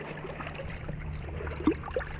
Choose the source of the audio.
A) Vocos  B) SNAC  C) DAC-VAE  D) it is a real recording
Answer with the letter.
D